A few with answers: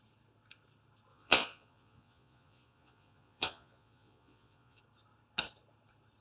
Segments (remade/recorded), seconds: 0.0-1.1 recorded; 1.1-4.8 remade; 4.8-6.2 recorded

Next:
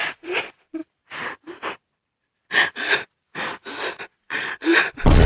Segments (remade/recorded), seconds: 0.0-0.8 remade; 0.8-4.0 recorded; 4.0-5.3 remade

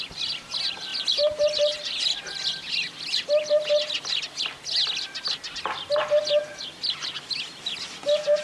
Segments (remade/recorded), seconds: 0.0-8.4 recorded

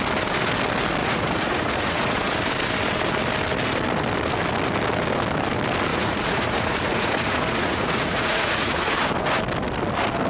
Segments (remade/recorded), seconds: 0.0-1.0 recorded; 1.0-2.3 remade; 2.3-5.9 recorded; 5.9-8.9 remade; 8.9-10.3 recorded

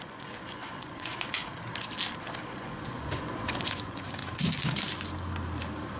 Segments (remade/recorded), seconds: 0.0-1.5 remade; 1.5-2.5 recorded; 2.5-4.2 remade; 4.2-6.0 recorded